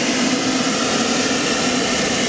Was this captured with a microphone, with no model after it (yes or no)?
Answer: yes